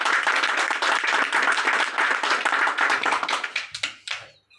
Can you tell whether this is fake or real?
real